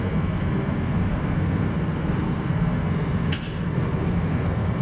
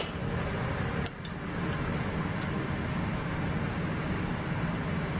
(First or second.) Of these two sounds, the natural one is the second